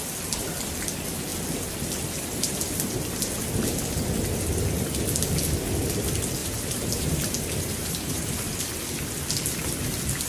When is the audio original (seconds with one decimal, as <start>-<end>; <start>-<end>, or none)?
0.0-6.4; 8.6-10.3